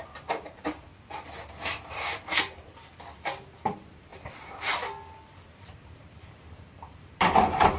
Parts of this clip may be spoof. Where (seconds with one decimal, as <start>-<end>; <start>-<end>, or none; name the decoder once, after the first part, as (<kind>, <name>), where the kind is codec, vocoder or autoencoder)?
0.0-0.9 (vocoder, BigVGAN v2); 3.6-4.1; 5.3-7.8